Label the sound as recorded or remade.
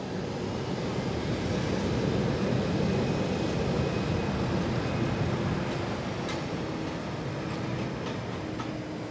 recorded